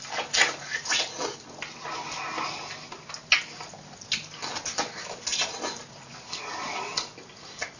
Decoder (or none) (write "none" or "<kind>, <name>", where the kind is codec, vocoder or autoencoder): none